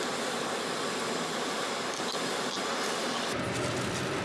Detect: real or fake real